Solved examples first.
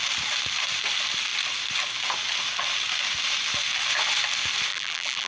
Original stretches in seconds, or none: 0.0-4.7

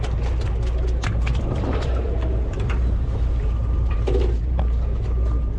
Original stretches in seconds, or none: 0.0-1.3; 4.6-5.6